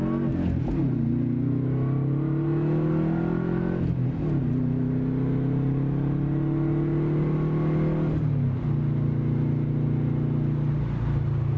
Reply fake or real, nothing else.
real